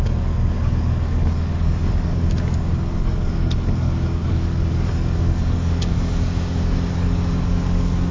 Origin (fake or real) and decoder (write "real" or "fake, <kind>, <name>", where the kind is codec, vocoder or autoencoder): fake, codec, DAC